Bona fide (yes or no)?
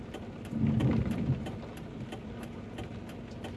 yes